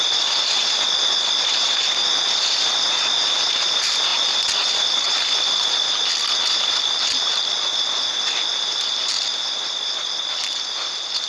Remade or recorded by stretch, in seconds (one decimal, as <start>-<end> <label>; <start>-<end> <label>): 0.0-8.5 recorded; 8.5-10.9 remade; 10.9-11.3 recorded